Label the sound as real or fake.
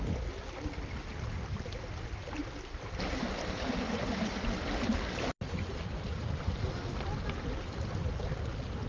real